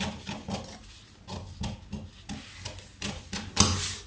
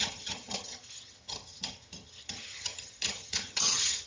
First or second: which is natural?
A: first